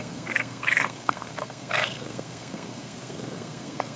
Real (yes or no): no